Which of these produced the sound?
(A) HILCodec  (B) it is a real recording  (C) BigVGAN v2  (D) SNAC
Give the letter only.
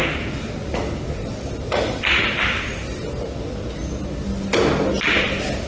B